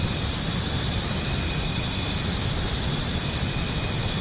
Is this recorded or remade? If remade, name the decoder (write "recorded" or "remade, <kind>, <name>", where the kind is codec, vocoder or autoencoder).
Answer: recorded